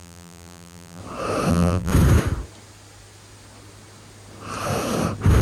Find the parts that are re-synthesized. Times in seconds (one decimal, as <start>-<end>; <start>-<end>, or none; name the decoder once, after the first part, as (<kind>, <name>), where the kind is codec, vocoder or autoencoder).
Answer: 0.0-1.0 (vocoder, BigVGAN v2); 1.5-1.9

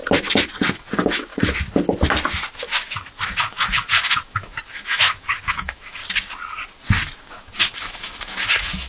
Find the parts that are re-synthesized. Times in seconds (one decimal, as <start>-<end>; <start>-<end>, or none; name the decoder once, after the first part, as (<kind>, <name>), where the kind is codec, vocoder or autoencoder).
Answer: 0.7-1.3 (autoencoder, DAC-VAE); 3.4-6.0; 7.2-8.9

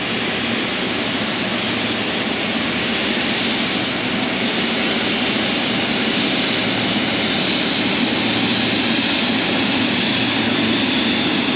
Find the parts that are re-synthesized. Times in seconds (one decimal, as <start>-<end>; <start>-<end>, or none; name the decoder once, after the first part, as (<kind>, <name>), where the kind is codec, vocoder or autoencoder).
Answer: 5.9-6.9 (vocoder, BigVGAN v2); 8.5-11.6

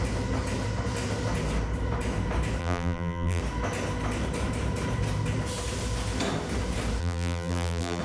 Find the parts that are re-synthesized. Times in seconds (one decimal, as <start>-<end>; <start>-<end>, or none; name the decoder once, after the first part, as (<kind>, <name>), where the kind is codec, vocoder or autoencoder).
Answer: 2.6-3.4 (vocoder, BigVGAN v2); 7.0-8.0